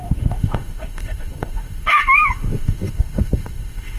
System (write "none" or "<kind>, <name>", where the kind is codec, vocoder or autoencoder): autoencoder, DAC-VAE